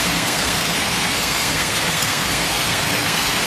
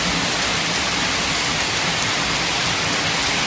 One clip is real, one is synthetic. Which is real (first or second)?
second